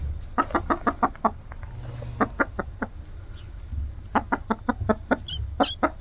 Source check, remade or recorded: recorded